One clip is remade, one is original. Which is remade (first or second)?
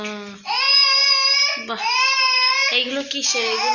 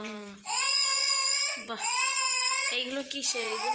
second